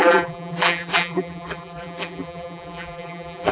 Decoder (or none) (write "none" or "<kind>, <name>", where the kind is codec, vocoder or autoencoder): vocoder, BigVGAN v2